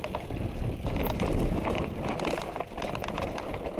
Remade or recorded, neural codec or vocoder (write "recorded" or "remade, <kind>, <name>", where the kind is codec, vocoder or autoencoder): recorded